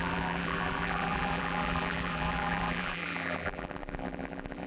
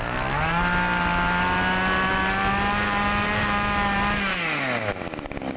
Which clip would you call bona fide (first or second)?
second